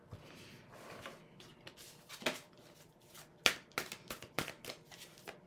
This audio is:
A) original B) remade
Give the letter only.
A